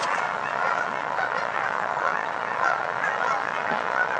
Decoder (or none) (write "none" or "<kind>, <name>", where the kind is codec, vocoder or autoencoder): vocoder, Vocos